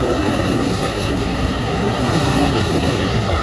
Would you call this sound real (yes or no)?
no